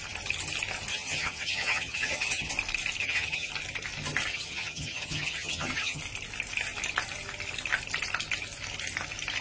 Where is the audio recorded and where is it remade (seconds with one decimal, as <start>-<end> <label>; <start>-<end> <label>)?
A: 0.0-0.9 recorded; 0.9-2.5 remade; 2.5-3.0 recorded; 3.0-3.5 remade; 3.5-4.3 recorded; 4.3-6.0 remade; 6.0-9.4 recorded